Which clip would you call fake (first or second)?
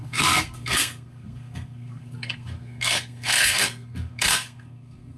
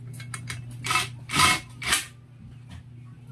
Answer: first